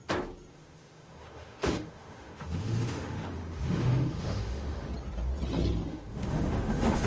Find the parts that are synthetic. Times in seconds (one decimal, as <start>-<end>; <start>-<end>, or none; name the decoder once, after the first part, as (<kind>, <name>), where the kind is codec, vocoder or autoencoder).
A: 0.5-4.9 (autoencoder, DAC-VAE); 5.9-7.1